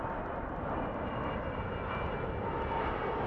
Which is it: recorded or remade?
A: recorded